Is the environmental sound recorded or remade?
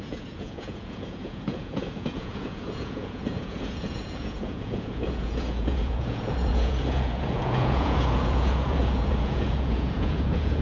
remade